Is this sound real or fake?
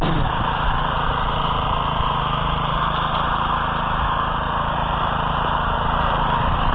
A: fake